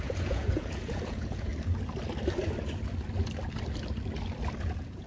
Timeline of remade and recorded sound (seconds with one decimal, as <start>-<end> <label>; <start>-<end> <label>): 0.0-1.5 remade; 1.5-4.6 recorded; 4.6-5.1 remade